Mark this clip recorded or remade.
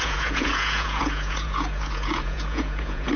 remade